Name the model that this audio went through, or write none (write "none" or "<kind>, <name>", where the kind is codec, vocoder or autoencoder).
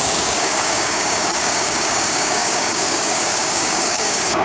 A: codec, DAC